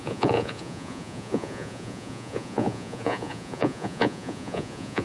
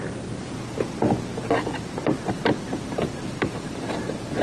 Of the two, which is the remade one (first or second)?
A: first